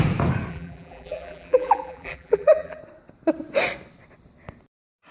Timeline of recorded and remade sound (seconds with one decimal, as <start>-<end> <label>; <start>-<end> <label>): 0.0-0.5 recorded; 0.5-2.8 remade; 2.8-5.1 recorded